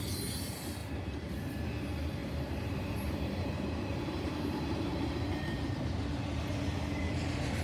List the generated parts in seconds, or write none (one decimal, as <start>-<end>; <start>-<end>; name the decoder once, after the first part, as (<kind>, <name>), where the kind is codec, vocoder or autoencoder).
0.8-1.4 (vocoder, BigVGAN v2); 2.2-5.1